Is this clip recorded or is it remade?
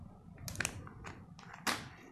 recorded